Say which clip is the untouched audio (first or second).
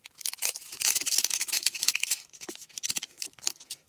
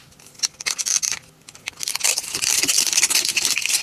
second